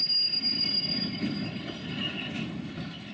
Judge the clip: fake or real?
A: real